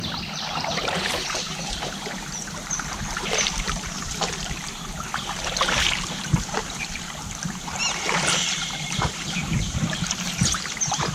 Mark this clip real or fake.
fake